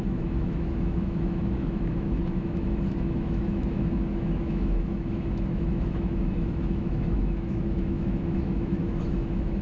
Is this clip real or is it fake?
fake